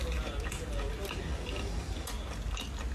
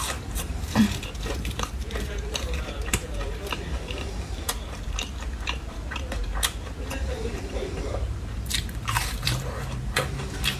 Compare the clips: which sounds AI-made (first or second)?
second